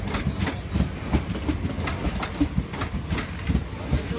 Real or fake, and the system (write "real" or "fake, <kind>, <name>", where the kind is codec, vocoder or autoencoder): real